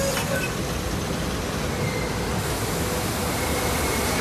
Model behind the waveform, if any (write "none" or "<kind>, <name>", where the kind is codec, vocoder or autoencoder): none